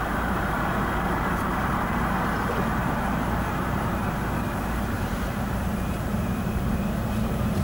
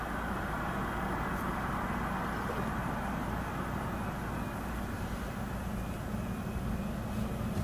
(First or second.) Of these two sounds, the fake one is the first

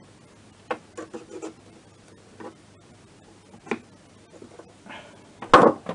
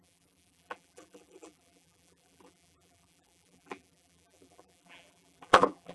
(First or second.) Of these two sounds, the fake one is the second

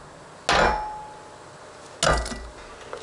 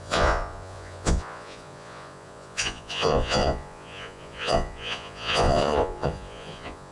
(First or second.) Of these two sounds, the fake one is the second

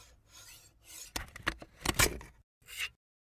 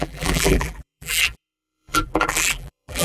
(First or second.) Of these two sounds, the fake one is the second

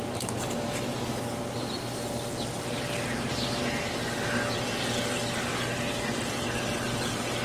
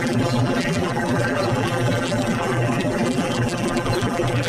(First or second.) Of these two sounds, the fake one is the second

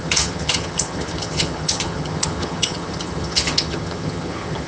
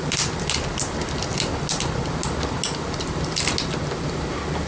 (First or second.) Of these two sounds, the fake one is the first